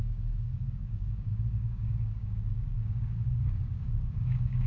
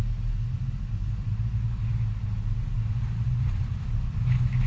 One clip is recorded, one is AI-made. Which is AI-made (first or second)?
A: first